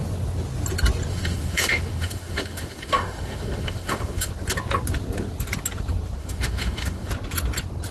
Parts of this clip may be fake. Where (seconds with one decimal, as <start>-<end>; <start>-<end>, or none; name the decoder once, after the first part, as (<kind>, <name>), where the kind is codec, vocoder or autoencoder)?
1.1-4.3 (autoencoder, DAC-VAE); 6.2-7.1